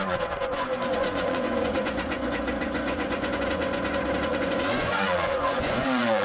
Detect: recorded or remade remade